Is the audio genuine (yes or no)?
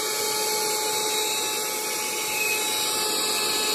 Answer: yes